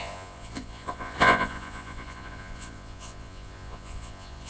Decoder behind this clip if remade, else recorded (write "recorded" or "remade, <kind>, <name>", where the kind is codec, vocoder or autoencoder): remade, vocoder, Vocos